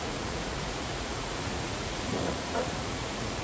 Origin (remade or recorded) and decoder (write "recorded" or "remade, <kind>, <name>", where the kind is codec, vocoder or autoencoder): remade, vocoder, Vocos